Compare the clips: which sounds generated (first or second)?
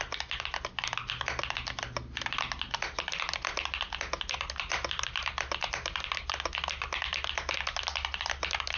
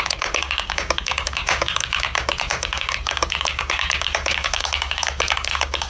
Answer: second